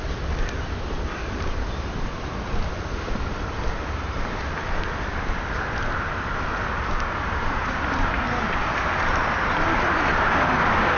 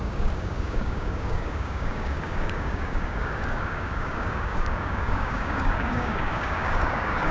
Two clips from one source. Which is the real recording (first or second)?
first